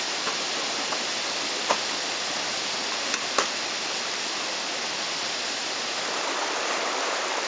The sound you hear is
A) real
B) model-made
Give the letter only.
B